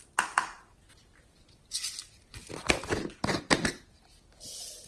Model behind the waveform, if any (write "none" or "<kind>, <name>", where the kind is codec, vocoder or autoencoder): none